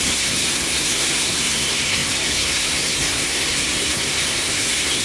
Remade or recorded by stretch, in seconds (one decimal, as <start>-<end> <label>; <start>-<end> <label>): 0.0-5.0 remade